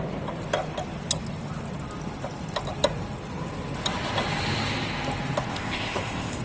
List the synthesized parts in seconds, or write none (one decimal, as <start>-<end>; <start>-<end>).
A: 5.5-6.4